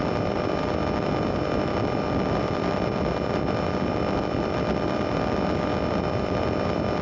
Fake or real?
real